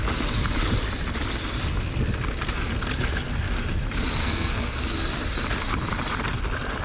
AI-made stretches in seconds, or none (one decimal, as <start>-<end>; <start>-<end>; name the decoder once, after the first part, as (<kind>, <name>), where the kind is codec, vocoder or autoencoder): 4.2-4.8 (codec, SNAC)